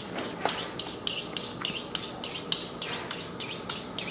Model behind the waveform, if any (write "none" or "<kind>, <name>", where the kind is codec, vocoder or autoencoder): none